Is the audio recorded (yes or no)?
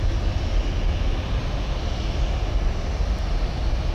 yes